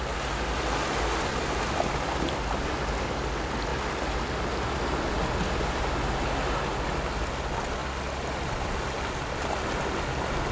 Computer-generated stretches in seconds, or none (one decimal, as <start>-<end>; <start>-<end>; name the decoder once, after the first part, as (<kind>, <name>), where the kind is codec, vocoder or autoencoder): none